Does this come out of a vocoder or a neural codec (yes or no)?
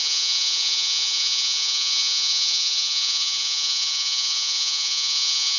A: yes